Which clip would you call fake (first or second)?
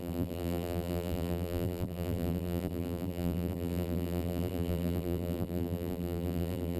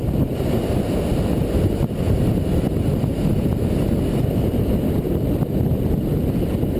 first